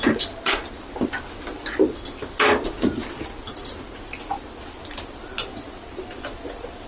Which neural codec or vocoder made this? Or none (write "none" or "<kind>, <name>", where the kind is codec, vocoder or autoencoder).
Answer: none